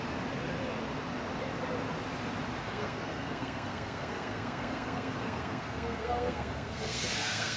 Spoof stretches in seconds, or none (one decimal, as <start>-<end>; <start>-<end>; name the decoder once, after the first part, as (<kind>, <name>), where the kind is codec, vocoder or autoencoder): 2.6-7.6 (codec, SNAC)